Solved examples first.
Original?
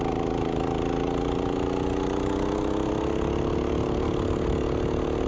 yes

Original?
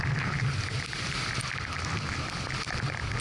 yes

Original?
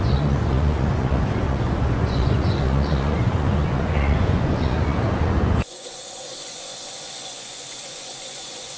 no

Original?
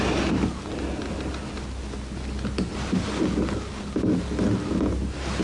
yes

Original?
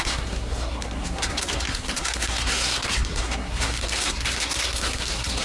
no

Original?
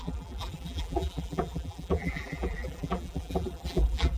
no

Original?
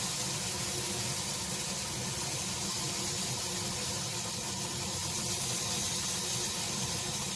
yes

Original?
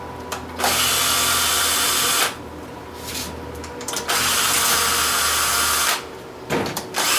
yes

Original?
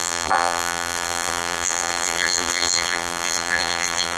no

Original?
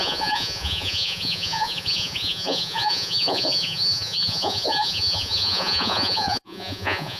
no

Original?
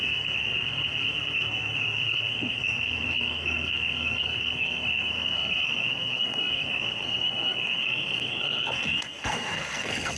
no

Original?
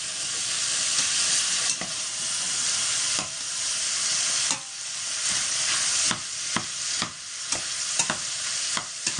no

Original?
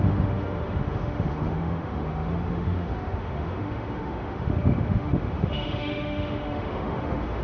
no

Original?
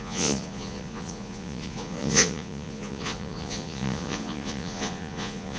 no